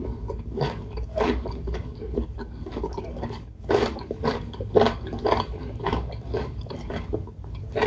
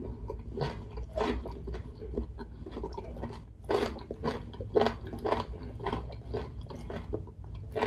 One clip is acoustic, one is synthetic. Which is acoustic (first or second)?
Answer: second